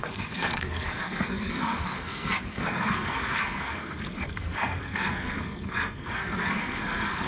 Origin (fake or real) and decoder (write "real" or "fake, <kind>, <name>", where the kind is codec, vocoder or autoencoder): fake, codec, SNAC